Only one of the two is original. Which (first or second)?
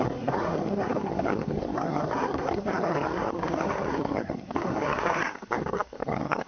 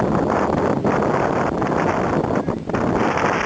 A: second